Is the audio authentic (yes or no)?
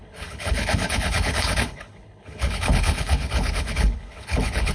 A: no